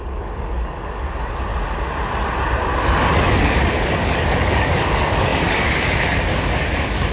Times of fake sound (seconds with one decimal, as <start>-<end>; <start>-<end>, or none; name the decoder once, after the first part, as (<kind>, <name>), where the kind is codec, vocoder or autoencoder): 0.0-1.5 (codec, DAC); 3.4-7.1